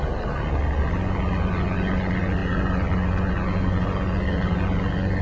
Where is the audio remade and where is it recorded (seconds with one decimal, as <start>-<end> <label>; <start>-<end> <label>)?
0.0-5.2 recorded